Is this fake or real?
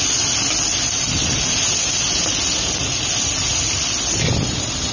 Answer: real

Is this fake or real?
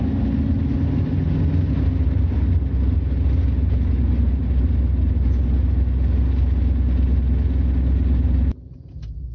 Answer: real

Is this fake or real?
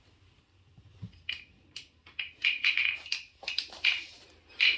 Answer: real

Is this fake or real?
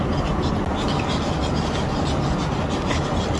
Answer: real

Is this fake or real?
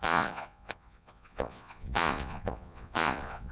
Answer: fake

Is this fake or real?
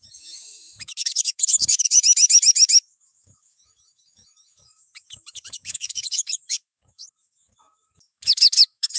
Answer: fake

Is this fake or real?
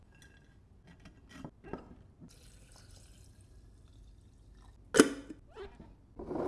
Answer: real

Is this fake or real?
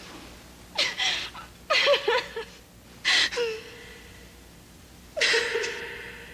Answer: real